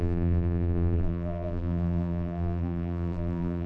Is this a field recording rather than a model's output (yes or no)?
no